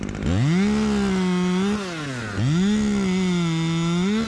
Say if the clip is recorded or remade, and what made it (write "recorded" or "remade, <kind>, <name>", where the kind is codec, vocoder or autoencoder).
recorded